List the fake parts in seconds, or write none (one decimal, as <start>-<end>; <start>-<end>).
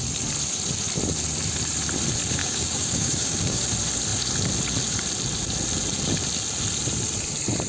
2.4-3.6